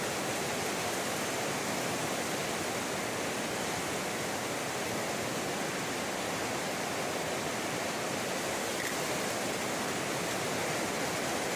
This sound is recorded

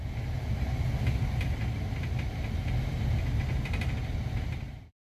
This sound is recorded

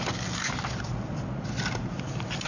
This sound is recorded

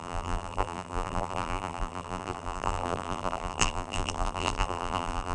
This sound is remade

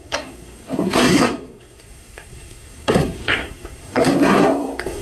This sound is remade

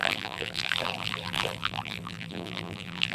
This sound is remade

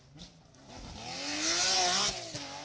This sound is recorded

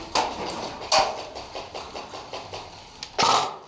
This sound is recorded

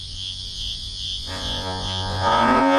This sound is remade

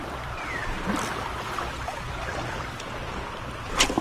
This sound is remade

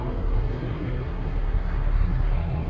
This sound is remade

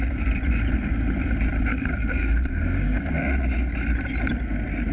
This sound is recorded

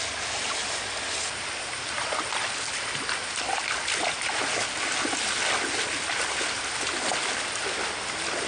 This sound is recorded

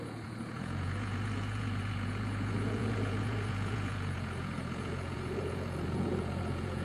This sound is remade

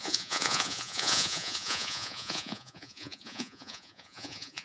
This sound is remade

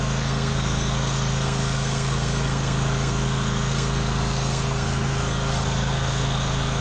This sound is remade